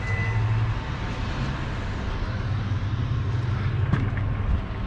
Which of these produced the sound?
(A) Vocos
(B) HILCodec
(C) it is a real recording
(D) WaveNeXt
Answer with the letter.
C